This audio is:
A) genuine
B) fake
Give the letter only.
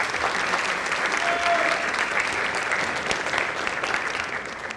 A